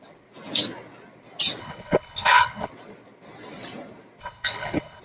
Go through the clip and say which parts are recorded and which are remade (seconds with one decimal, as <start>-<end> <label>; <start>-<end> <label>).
0.0-1.6 recorded; 1.6-2.7 remade; 2.7-4.2 recorded; 4.2-5.0 remade